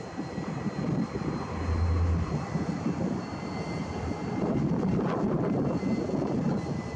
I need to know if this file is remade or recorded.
recorded